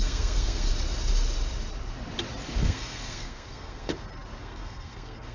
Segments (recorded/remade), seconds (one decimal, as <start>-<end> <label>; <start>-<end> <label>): 0.0-0.7 remade; 0.7-2.6 recorded; 2.6-3.9 remade; 3.9-4.4 recorded; 4.4-5.3 remade